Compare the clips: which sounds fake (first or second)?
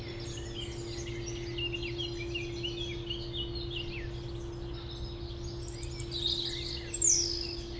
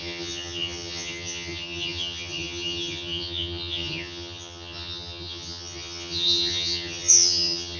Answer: second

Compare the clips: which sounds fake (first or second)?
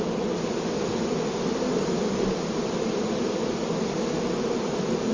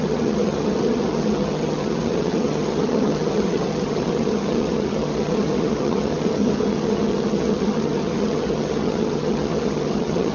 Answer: second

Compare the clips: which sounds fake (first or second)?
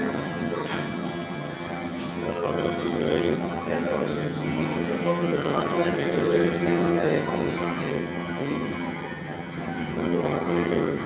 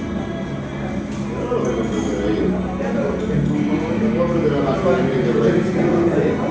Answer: first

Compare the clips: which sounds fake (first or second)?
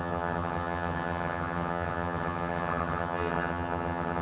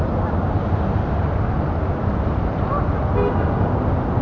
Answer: first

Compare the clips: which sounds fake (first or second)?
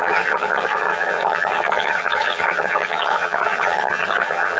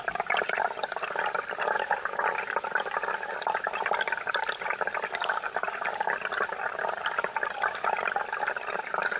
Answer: first